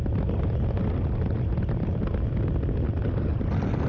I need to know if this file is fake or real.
real